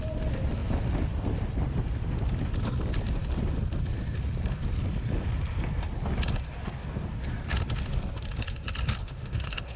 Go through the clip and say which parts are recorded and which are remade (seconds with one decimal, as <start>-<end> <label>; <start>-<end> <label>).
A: 0.0-9.0 recorded; 9.0-9.8 remade